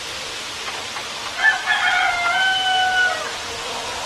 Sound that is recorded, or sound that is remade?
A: recorded